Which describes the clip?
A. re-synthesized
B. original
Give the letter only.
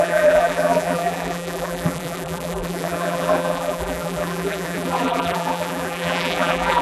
A